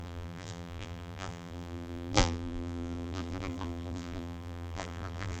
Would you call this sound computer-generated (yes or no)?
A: yes